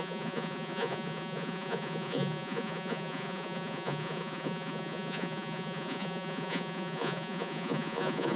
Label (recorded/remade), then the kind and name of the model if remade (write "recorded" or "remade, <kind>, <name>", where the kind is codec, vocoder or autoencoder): remade, vocoder, Vocos